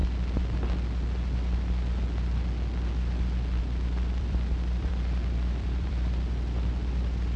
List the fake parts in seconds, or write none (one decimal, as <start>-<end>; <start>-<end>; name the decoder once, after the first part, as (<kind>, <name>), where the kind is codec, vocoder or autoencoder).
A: 3.6-7.4 (vocoder, BigVGAN v2)